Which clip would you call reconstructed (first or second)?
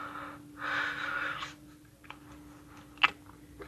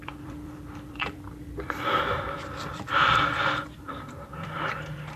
second